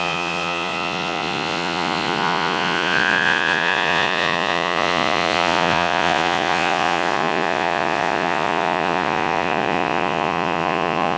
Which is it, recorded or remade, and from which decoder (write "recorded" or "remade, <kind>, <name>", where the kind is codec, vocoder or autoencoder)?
remade, vocoder, Vocos